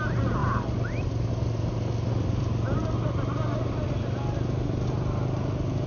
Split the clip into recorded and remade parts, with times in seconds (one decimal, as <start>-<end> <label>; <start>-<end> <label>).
0.0-5.9 recorded